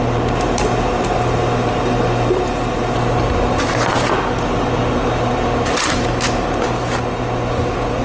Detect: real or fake real